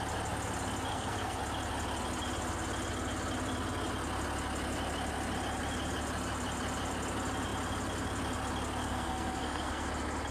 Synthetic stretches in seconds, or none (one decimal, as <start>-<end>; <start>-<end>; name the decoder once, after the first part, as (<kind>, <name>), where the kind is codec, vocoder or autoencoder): 0.9-1.4 (codec, SNAC); 8.8-9.9